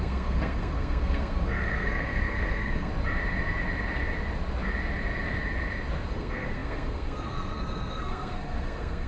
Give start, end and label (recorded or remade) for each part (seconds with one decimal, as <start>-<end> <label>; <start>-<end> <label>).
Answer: 0.0-2.9 remade; 2.9-6.1 recorded; 6.1-9.1 remade